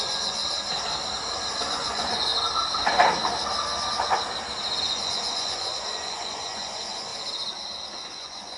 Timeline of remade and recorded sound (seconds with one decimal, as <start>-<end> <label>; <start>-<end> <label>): 0.0-0.4 remade; 0.4-1.7 recorded; 1.7-2.3 remade; 2.3-4.8 recorded; 4.8-7.1 remade; 7.1-8.2 recorded; 8.2-8.6 remade